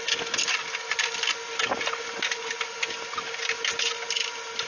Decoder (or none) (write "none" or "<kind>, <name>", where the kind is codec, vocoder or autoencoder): none